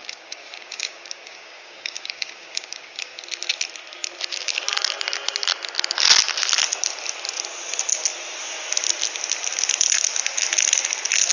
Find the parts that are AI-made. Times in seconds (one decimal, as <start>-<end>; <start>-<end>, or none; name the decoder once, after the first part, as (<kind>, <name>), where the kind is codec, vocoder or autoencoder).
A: 0.0-3.2 (codec, DAC)